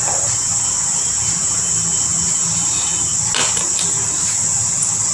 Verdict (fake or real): real